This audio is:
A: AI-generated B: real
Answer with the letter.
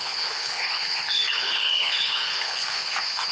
A